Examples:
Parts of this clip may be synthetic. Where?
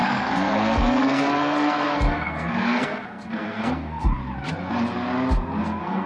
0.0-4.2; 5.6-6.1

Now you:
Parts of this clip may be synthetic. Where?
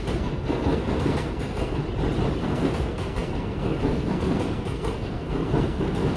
0.0-1.8; 2.4-6.2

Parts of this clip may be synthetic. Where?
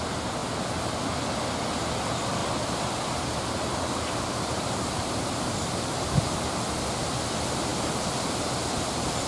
2.4-5.7; 7.7-8.4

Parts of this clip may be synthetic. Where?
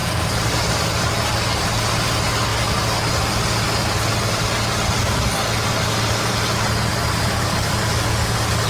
0.0-0.6; 6.9-7.7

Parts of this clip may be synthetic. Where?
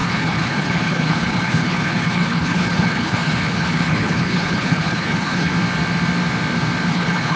0.0-5.5; 6.9-7.4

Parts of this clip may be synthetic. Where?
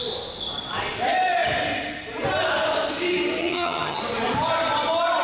3.4-4.0